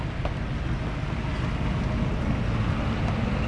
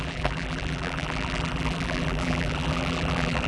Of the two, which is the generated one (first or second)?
second